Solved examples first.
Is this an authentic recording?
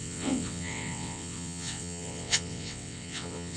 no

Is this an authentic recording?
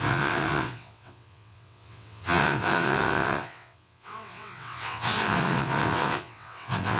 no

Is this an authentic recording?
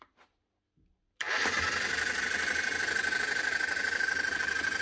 yes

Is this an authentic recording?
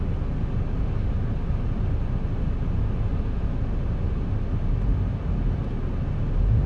yes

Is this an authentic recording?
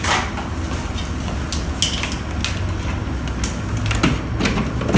yes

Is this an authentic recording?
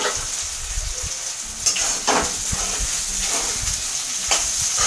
yes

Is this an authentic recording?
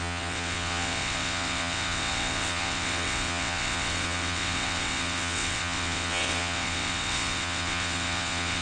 no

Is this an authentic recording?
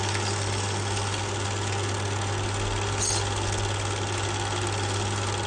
yes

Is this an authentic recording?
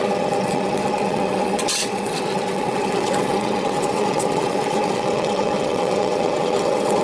no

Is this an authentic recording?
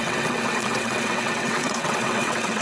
no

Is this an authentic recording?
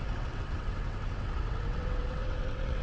no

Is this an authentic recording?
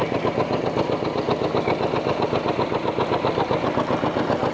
yes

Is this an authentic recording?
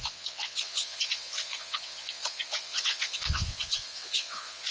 no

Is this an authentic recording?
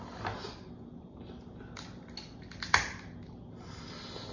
yes